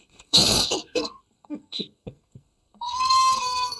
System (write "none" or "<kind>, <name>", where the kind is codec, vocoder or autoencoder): codec, SNAC